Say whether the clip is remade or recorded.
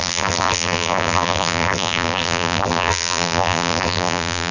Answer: remade